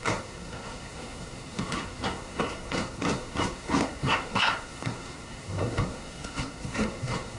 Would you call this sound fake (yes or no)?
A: yes